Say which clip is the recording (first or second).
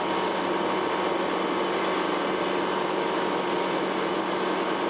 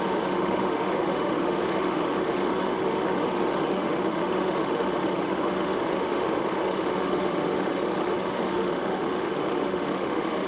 first